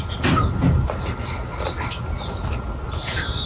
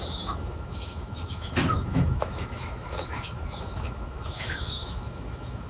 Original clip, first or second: first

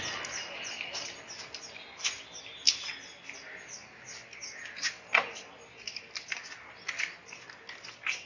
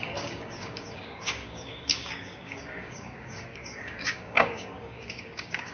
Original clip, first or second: first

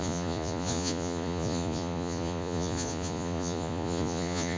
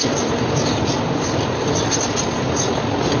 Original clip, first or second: second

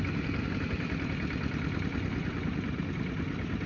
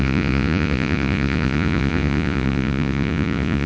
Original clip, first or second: first